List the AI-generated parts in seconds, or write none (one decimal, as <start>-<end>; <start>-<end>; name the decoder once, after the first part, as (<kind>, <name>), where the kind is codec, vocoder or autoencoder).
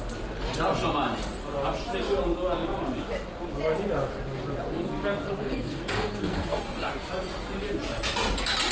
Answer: 5.2-6.9 (codec, SNAC)